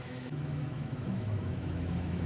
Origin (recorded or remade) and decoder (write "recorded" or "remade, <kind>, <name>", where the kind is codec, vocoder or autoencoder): remade, autoencoder, DAC-VAE